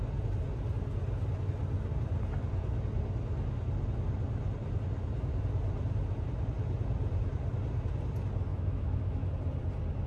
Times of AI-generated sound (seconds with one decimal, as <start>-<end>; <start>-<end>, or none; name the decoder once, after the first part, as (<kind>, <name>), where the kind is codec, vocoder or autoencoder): 8.5-9.3 (autoencoder, DAC-VAE)